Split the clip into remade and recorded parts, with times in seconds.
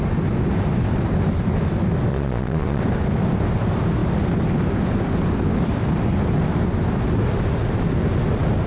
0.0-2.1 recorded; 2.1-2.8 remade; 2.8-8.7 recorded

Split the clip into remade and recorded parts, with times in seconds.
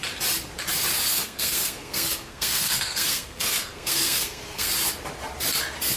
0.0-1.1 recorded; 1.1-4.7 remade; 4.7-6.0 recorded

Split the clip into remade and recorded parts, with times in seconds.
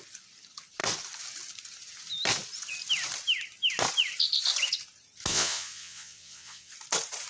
0.0-5.3 recorded; 5.3-6.7 remade; 6.7-7.3 recorded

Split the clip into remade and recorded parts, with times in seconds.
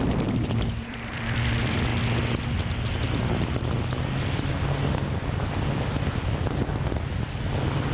0.0-1.9 remade; 1.9-4.1 recorded; 4.1-6.7 remade; 6.7-7.2 recorded; 7.2-7.9 remade